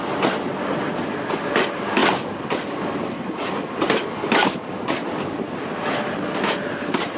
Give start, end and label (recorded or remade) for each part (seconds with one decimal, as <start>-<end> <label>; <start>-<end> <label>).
0.0-7.2 recorded